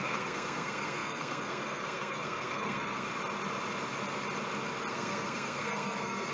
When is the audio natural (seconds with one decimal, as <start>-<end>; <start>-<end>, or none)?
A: 3.1-4.9